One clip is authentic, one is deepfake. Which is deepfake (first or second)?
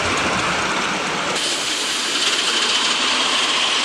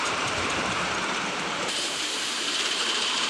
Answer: second